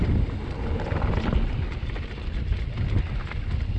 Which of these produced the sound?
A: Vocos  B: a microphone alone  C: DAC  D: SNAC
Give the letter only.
B